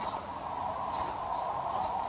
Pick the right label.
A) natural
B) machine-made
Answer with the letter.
A